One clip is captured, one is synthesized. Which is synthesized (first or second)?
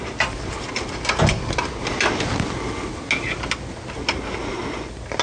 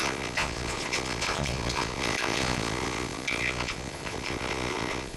second